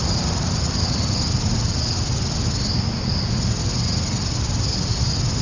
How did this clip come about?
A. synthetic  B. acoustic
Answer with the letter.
B